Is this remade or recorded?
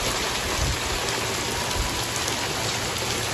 recorded